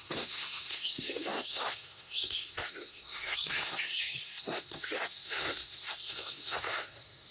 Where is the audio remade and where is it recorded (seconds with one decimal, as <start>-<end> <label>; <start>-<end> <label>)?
0.0-7.3 remade